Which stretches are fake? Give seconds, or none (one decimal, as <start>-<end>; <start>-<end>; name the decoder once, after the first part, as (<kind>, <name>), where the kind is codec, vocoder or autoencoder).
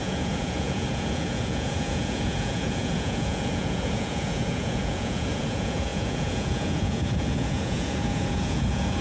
0.0-9.0 (vocoder, Vocos)